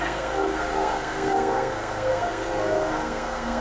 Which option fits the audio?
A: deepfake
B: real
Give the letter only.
A